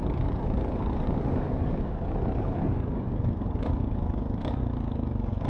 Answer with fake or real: fake